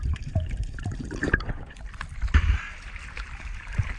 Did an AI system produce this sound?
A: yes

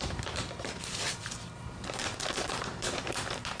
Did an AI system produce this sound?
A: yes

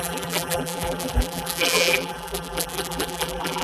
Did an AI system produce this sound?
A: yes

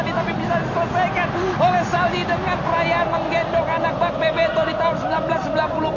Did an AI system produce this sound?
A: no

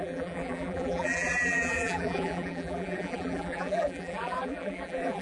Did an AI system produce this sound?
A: yes